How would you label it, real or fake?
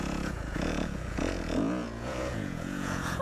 fake